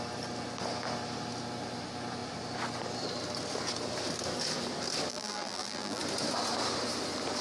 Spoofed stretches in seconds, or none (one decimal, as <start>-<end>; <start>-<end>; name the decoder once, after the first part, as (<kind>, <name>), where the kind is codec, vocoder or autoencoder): 5.1-6.0 (vocoder, BigVGAN v2)